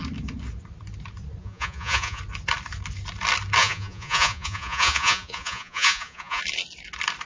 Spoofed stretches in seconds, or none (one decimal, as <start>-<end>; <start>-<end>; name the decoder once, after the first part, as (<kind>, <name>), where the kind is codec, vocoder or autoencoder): 1.4-2.2 (vocoder, Vocos); 3.6-6.4